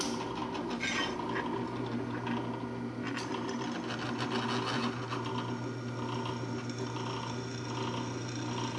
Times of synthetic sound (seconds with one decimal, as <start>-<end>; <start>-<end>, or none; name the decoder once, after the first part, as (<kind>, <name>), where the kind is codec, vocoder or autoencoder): none

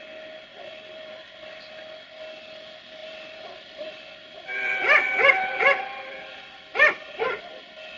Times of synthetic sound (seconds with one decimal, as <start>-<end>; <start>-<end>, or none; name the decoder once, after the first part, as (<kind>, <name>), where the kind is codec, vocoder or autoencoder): 0.5-1.7 (vocoder, BigVGAN v2); 3.0-7.6

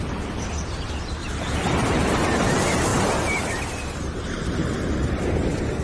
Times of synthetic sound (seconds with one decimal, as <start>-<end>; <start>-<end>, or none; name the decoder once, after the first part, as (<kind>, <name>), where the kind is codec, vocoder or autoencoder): 1.2-1.9 (vocoder, BigVGAN v2); 2.9-5.3